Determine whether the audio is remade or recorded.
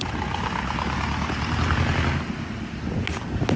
recorded